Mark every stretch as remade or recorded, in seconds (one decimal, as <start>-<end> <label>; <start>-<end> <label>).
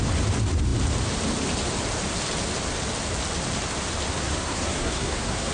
0.0-4.2 recorded; 4.2-5.5 remade